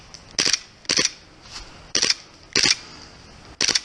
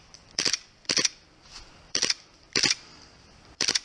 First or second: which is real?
first